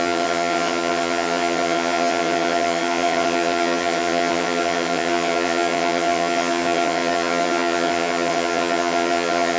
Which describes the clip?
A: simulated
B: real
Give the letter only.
A